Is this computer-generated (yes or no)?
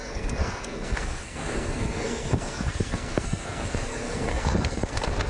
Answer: yes